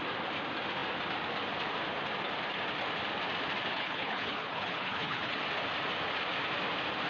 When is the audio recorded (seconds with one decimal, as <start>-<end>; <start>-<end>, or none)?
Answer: 0.0-3.7; 5.4-7.1